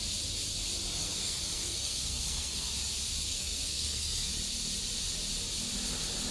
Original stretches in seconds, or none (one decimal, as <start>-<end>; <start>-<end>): 0.0-0.9; 2.7-3.3; 4.3-6.3